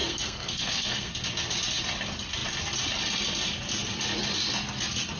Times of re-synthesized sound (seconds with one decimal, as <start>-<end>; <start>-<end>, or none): 0.0-1.1